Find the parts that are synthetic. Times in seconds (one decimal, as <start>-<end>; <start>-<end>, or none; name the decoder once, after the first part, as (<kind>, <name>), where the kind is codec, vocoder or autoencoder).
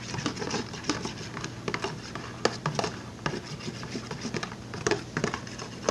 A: none